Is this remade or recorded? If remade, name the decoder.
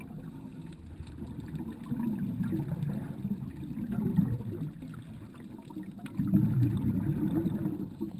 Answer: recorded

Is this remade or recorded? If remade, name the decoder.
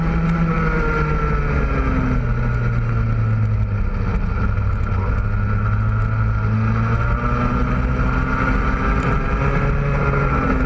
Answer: recorded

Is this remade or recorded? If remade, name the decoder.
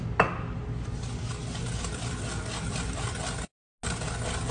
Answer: recorded